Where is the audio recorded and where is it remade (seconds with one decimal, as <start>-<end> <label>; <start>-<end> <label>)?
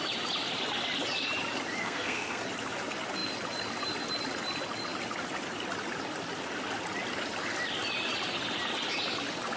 0.0-1.8 recorded; 1.8-2.4 remade; 2.4-9.6 recorded